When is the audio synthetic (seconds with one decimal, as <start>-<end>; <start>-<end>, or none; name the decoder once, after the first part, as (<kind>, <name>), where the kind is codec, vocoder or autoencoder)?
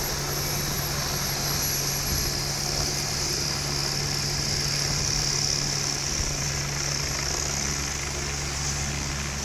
none